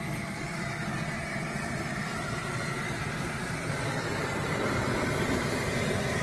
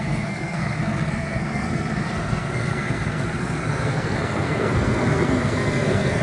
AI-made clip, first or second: second